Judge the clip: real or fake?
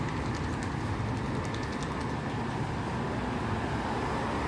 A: real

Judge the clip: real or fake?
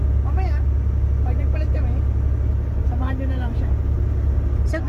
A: real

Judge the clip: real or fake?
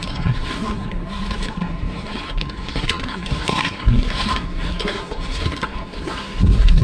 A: fake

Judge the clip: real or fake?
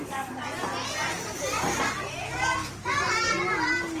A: real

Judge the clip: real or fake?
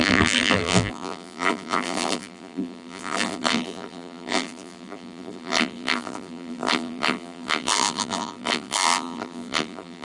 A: fake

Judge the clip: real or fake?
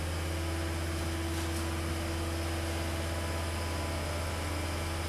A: real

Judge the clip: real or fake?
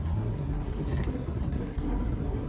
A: fake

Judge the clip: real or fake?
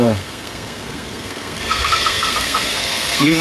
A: fake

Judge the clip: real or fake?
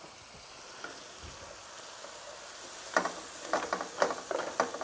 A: real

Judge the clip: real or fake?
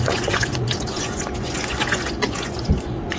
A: fake